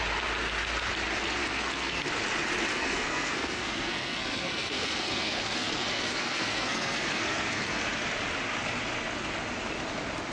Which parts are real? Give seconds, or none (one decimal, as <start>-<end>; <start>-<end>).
0.0-1.4; 2.0-2.7; 7.9-10.3